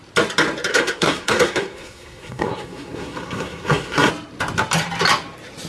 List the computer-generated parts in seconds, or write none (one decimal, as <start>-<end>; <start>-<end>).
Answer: 0.7-4.1